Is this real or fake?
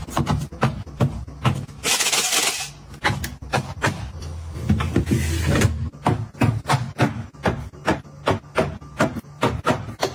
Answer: real